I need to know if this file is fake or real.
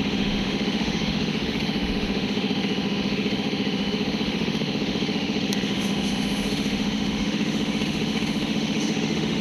fake